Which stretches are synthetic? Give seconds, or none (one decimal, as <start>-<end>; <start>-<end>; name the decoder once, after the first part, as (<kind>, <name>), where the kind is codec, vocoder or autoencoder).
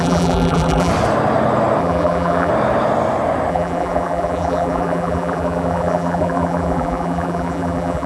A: 0.0-0.9 (vocoder, BigVGAN v2); 1.8-2.5; 3.5-8.1